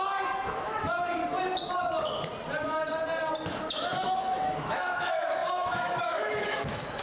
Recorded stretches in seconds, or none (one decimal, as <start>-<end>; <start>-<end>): 1.2-3.5